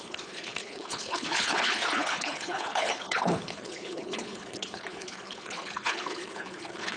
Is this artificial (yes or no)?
yes